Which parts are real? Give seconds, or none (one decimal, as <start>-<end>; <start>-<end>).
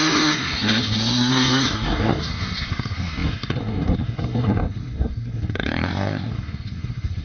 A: none